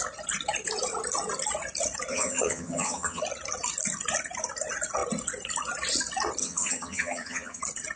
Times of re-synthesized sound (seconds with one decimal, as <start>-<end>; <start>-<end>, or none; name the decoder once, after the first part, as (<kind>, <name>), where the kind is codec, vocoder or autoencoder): 2.1-3.2 (vocoder, HiFi-GAN); 6.4-7.6